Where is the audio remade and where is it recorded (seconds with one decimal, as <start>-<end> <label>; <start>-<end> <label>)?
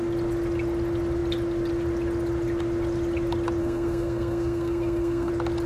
0.0-3.6 recorded; 3.6-5.3 remade; 5.3-5.7 recorded